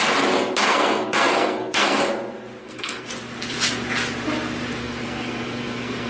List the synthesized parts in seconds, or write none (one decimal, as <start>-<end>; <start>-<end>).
0.6-2.0; 2.6-3.1; 4.8-6.1